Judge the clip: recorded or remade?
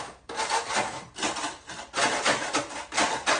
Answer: remade